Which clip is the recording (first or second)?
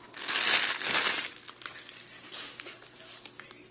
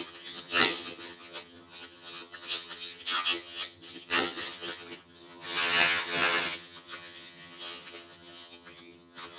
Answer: first